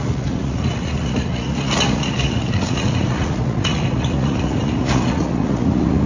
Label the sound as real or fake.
fake